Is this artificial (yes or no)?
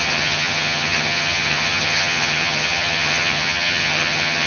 yes